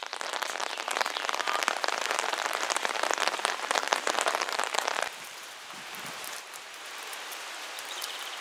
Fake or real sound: fake